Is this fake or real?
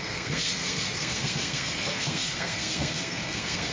fake